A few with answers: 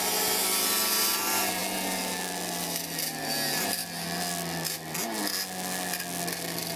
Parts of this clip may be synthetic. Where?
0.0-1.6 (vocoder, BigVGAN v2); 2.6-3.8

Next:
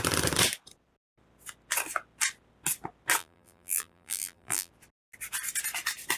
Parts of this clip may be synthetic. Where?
3.2-4.7 (vocoder, BigVGAN v2)

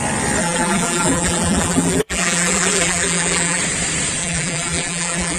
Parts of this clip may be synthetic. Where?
0.4-3.6 (vocoder, BigVGAN v2); 4.2-5.4

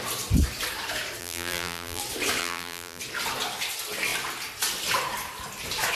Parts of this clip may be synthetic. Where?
1.2-2.0 (vocoder, BigVGAN v2); 2.4-3.0

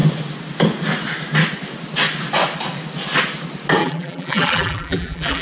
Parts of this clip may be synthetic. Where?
3.8-5.4 (vocoder, BigVGAN v2)